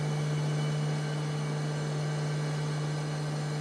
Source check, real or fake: real